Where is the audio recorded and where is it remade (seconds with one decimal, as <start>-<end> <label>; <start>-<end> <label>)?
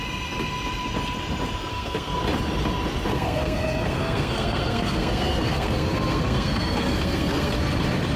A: 0.0-1.7 recorded; 1.7-2.2 remade; 2.2-3.1 recorded; 3.1-7.5 remade; 7.5-8.2 recorded